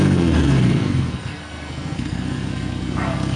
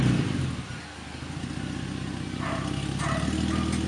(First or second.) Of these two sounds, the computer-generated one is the first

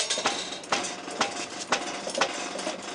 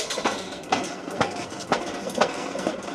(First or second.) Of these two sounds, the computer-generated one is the second